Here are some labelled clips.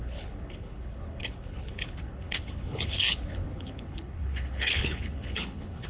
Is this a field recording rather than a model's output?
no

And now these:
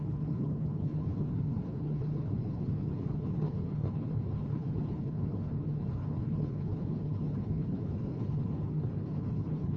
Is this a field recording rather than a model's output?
no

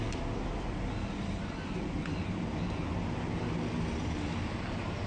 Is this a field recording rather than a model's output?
yes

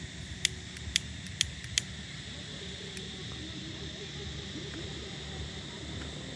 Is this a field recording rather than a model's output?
yes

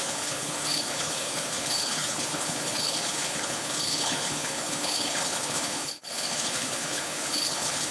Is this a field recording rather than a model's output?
no